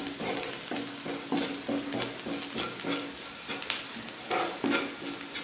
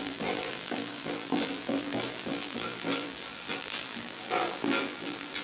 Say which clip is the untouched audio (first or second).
first